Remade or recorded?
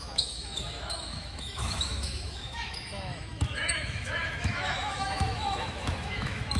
remade